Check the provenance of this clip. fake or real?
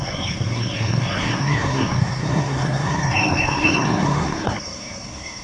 fake